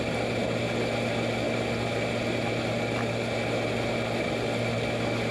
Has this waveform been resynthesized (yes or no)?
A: no